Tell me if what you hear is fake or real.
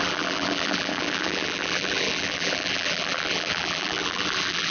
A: fake